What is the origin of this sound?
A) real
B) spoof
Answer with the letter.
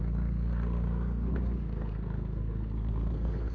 B